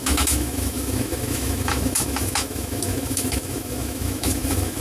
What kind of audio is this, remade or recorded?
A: remade